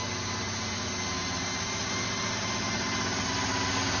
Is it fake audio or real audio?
real